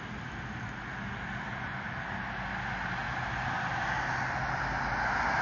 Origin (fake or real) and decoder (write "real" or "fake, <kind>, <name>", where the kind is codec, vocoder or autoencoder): real